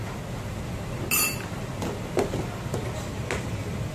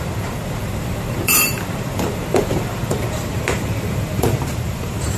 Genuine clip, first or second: first